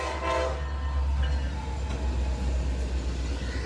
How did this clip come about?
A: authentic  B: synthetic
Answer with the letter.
A